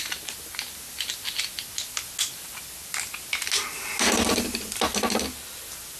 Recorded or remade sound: recorded